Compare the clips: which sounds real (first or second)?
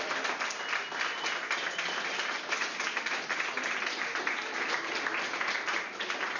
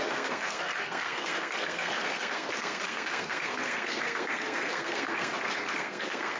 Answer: first